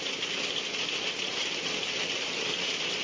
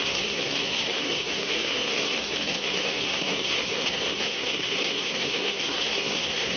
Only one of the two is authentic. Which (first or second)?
first